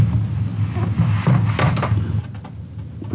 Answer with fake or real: real